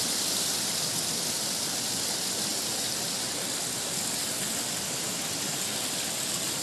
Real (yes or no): yes